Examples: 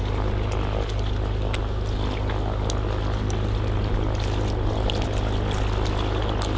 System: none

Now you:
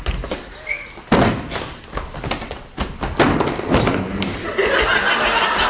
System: none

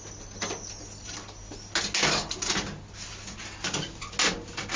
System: none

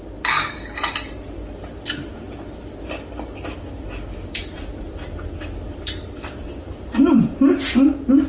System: none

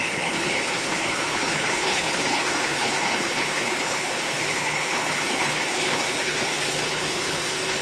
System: codec, HILCodec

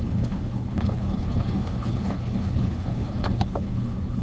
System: codec, HILCodec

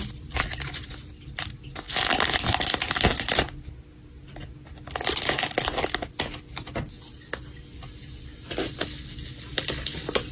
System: none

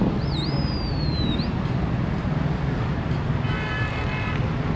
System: none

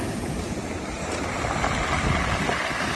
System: none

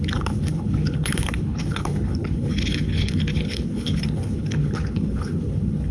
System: codec, HILCodec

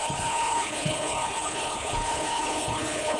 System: codec, HILCodec